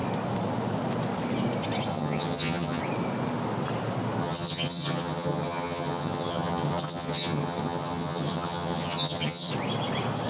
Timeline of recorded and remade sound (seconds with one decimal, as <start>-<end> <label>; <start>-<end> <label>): 0.0-1.9 recorded; 1.9-2.8 remade; 2.8-4.2 recorded; 4.2-9.5 remade; 9.5-10.3 recorded